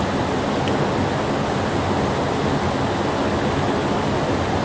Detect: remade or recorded recorded